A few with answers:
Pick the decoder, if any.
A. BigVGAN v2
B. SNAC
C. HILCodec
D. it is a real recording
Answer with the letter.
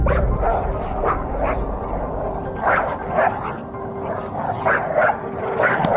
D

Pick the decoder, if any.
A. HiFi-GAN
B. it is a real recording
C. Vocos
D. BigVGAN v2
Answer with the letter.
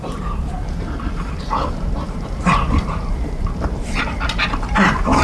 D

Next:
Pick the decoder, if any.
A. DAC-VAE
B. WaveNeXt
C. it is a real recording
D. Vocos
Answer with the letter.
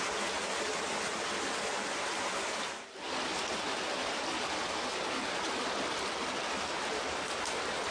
C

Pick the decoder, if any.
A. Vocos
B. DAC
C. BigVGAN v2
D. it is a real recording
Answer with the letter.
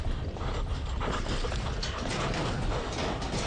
C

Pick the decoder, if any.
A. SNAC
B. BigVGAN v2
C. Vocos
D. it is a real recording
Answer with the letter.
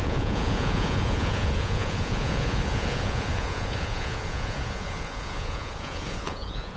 C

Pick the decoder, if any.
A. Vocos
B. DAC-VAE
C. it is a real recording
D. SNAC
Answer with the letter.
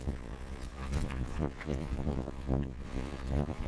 A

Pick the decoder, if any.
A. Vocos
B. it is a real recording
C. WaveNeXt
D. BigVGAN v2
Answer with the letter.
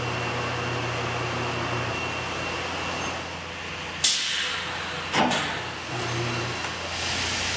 B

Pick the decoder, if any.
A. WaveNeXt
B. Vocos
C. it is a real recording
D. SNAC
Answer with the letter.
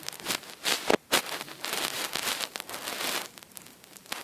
C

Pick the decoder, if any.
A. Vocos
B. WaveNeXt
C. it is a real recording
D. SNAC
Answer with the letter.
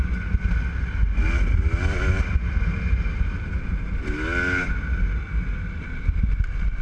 C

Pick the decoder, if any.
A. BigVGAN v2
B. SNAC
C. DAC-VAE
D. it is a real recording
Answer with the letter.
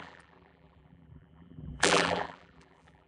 A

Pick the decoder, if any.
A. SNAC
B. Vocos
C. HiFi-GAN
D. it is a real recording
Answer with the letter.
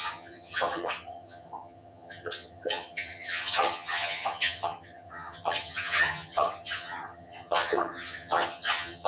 C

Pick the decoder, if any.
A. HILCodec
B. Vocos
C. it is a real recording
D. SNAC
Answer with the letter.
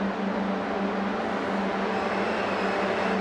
C